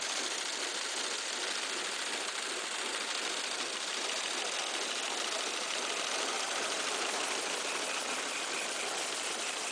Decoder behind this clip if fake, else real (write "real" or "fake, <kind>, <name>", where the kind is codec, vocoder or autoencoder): real